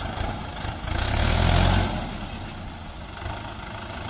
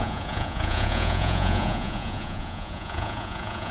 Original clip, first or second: first